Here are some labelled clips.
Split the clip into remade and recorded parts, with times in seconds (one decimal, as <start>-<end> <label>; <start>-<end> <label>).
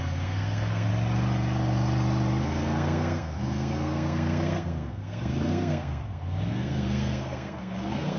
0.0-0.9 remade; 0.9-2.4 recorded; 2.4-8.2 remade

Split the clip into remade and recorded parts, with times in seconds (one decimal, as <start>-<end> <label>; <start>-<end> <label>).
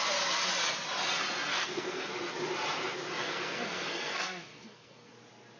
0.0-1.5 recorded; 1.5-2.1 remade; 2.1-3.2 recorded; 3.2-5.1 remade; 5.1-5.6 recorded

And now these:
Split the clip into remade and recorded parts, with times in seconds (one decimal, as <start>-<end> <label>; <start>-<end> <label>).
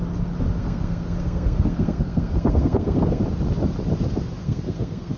0.0-0.6 recorded; 0.6-3.2 remade; 3.2-4.4 recorded; 4.4-5.2 remade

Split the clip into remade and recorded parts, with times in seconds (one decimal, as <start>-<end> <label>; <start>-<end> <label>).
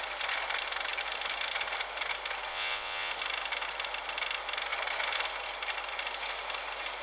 0.0-2.5 recorded; 2.5-3.1 remade; 3.1-7.0 recorded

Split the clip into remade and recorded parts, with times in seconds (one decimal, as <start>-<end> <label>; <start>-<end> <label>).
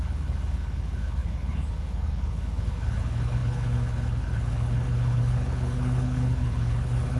0.0-7.2 remade